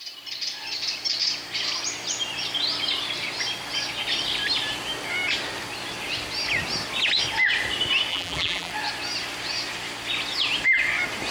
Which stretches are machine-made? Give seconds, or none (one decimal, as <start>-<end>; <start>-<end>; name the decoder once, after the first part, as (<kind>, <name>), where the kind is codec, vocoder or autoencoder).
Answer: 8.1-8.7 (vocoder, BigVGAN v2)

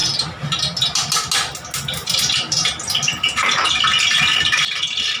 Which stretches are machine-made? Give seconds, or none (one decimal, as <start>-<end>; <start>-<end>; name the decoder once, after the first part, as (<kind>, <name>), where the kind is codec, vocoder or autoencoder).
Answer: 2.0-4.8 (vocoder, BigVGAN v2)

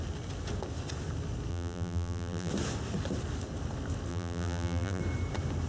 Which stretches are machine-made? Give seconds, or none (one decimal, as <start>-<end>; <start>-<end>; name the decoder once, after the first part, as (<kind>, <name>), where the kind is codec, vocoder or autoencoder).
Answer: 1.5-2.5 (vocoder, BigVGAN v2); 4.1-5.0

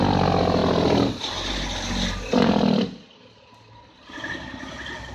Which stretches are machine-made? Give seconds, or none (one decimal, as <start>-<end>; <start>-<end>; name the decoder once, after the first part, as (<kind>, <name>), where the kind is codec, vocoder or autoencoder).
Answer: none

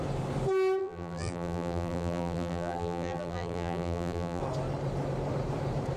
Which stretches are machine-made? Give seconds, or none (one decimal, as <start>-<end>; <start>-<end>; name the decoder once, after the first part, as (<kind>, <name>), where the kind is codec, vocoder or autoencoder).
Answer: 0.8-4.4 (vocoder, BigVGAN v2)